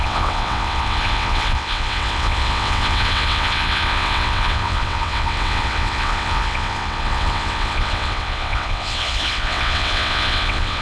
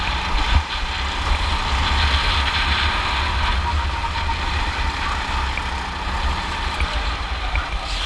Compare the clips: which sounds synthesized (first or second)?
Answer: first